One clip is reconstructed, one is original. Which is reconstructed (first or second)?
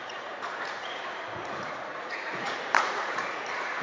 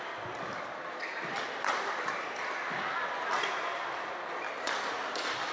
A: first